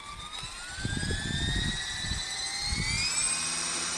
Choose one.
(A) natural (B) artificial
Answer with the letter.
A